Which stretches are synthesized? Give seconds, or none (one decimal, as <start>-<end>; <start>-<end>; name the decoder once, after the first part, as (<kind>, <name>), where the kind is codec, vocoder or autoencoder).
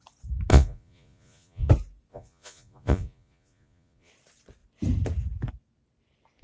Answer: 0.5-1.7 (vocoder, Vocos); 2.1-4.1